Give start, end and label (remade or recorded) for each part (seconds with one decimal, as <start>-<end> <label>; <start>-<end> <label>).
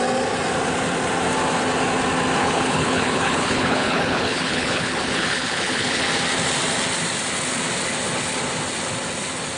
0.0-2.4 recorded; 2.4-6.0 remade; 6.0-9.6 recorded